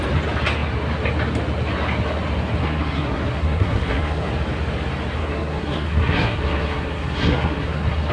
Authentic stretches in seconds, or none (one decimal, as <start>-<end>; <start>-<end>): 0.0-2.6; 4.3-5.2